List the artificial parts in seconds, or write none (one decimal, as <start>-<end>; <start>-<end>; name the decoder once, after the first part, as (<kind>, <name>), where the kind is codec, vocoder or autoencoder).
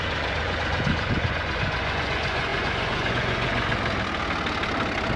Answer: 0.0-3.7 (vocoder, Vocos)